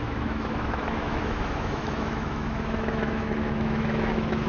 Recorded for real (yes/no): no